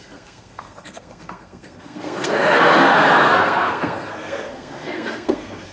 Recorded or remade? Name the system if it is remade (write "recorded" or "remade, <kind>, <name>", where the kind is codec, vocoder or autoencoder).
remade, codec, SNAC